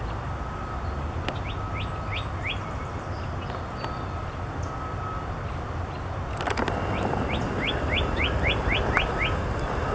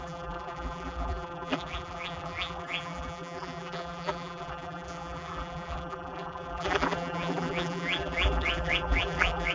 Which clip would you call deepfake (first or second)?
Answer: second